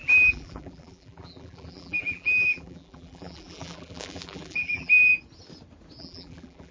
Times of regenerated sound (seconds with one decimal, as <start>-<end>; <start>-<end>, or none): 0.0-5.1; 6.0-6.7